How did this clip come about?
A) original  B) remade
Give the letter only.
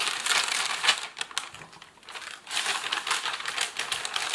A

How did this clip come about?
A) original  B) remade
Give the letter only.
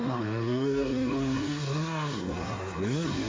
B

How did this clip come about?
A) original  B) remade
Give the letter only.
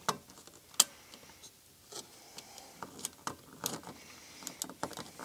A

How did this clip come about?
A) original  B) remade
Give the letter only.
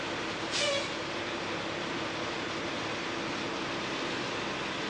A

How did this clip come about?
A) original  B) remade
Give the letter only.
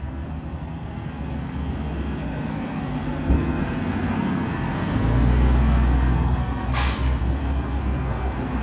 B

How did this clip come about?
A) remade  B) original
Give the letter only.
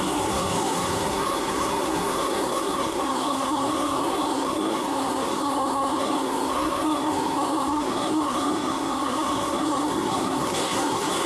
A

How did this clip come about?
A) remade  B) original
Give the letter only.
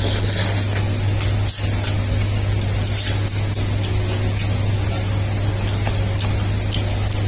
B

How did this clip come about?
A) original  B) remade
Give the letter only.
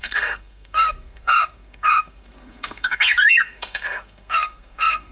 B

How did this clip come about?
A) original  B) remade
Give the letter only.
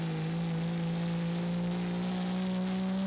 A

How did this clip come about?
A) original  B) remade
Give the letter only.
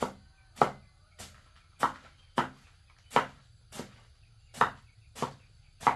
A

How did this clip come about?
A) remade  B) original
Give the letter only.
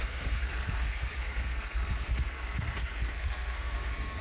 A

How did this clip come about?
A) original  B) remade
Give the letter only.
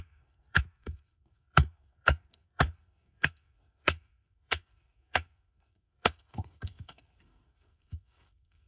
B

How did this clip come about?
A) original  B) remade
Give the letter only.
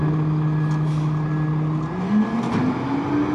A